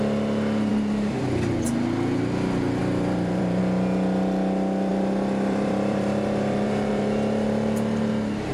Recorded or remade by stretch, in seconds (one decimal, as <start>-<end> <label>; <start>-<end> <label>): 0.0-0.7 recorded; 0.7-1.5 remade; 1.5-2.8 recorded; 2.8-3.6 remade; 3.6-4.9 recorded; 4.9-8.1 remade; 8.1-8.5 recorded